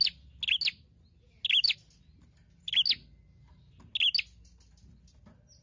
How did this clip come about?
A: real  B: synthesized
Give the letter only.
A